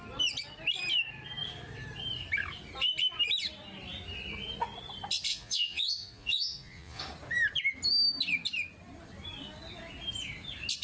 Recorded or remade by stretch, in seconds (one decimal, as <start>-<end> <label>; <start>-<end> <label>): 0.0-5.3 recorded; 5.3-7.0 remade; 7.0-10.8 recorded

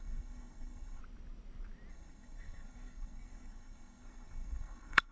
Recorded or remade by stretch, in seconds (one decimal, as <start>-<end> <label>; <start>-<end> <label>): 0.0-1.0 remade; 1.0-1.9 recorded; 1.9-5.1 remade